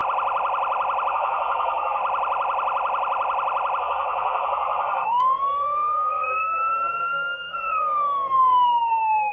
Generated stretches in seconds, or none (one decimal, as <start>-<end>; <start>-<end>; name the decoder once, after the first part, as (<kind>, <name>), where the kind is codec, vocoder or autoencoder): 1.1-2.0 (codec, SNAC); 3.8-9.3